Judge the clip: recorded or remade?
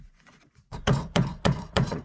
remade